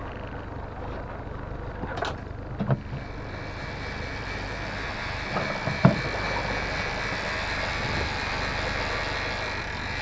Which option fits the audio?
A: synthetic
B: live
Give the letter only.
B